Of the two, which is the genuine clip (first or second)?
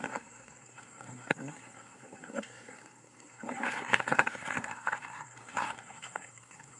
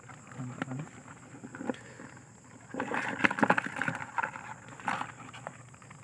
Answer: second